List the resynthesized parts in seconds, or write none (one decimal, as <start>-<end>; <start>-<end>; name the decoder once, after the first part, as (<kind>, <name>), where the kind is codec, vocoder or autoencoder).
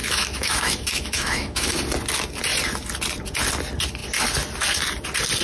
0.0-1.8 (autoencoder, DAC-VAE)